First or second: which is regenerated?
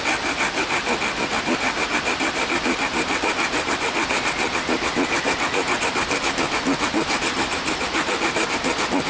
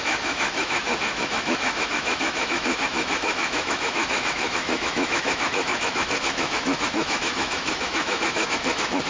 second